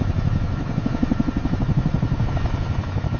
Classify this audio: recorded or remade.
recorded